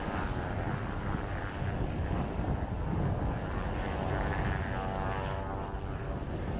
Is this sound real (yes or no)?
yes